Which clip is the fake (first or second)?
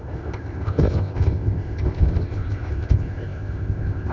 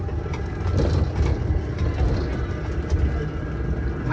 first